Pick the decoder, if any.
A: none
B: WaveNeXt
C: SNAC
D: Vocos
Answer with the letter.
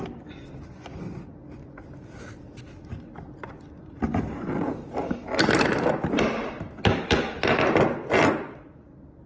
A